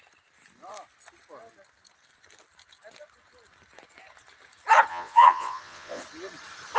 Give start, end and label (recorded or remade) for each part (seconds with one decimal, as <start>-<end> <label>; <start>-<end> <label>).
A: 0.0-4.9 recorded; 4.9-6.0 remade; 6.0-6.8 recorded

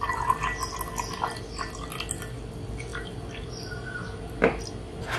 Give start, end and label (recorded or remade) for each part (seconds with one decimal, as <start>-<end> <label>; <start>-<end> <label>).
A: 0.0-2.9 recorded; 2.9-4.4 remade; 4.4-5.2 recorded

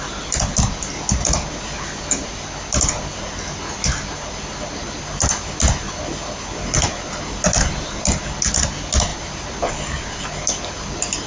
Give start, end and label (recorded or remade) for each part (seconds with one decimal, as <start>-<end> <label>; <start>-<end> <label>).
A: 0.0-11.3 recorded

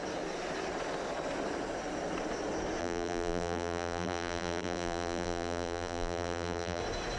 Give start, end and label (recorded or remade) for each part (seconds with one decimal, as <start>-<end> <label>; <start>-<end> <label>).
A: 0.0-2.8 recorded; 2.8-6.8 remade; 6.8-7.2 recorded

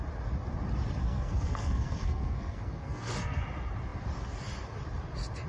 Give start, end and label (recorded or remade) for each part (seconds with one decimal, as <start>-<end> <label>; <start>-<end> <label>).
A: 0.0-1.0 recorded; 1.0-3.4 remade; 3.4-5.5 recorded

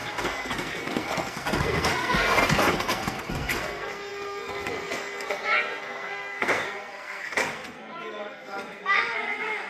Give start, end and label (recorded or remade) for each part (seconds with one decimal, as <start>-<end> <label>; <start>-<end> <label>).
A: 0.0-9.7 remade

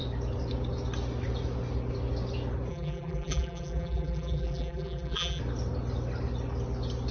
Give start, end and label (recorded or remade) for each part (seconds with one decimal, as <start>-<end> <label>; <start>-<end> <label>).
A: 0.0-2.7 recorded; 2.7-5.4 remade; 5.4-7.1 recorded